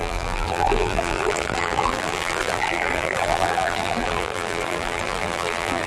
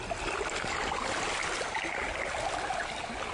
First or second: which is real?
second